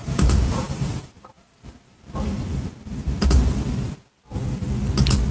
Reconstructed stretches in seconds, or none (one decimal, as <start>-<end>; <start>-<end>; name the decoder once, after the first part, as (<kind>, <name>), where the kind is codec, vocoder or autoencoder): 0.0-3.2 (vocoder, BigVGAN v2)